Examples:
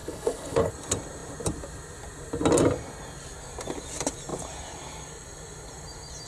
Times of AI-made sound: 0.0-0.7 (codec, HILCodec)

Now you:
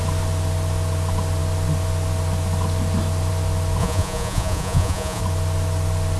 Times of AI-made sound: 3.8-5.2 (vocoder, Vocos)